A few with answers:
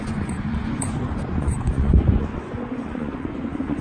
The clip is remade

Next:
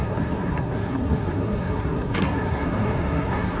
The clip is remade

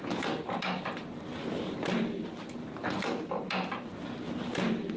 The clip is recorded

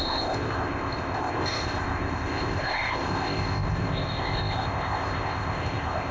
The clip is remade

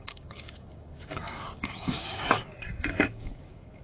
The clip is remade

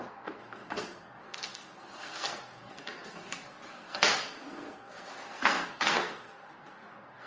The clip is remade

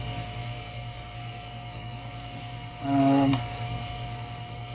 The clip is remade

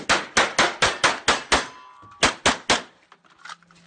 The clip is recorded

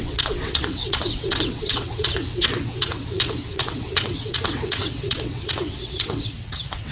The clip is remade